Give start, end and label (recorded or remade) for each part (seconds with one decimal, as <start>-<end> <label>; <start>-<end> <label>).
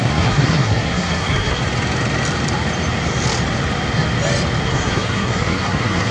0.0-1.6 remade; 1.6-4.6 recorded; 4.6-6.1 remade